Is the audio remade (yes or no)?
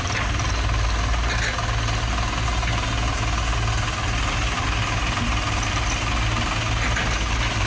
no